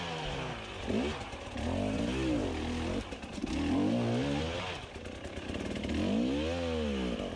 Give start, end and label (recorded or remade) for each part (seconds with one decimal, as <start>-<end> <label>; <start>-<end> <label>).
0.0-7.4 recorded